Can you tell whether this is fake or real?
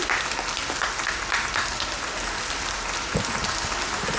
real